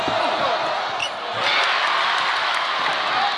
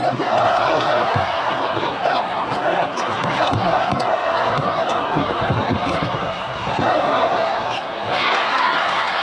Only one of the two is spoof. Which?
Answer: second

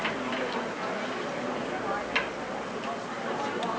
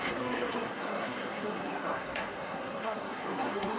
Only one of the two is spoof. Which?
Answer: second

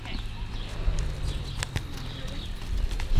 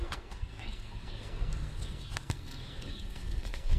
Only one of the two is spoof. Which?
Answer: second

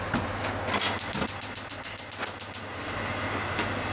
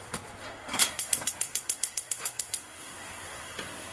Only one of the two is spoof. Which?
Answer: second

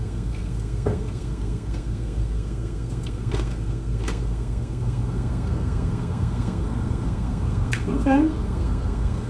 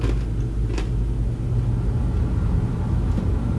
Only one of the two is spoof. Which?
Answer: first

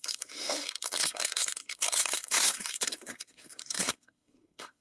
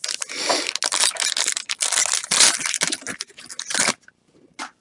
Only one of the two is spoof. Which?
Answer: first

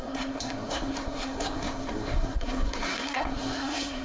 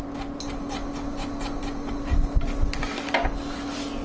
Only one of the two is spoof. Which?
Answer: first